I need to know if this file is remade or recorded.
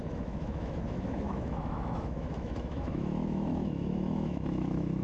remade